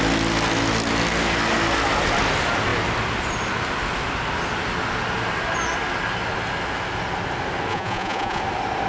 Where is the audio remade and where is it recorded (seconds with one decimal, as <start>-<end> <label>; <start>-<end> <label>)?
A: 0.0-7.7 recorded; 7.7-8.4 remade; 8.4-8.9 recorded